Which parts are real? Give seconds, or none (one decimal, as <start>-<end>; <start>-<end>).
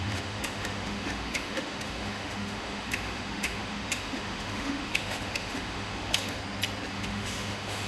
6.4-6.9